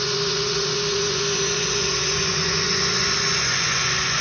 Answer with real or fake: fake